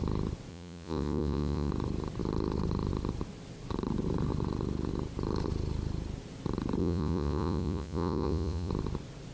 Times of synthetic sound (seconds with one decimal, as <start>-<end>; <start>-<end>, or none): 0.5-1.7; 6.8-8.7